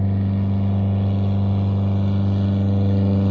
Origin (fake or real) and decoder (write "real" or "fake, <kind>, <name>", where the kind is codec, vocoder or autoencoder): real